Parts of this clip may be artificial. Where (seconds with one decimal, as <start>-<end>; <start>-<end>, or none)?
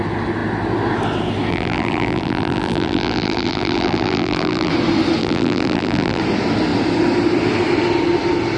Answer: 1.5-4.7; 5.2-6.2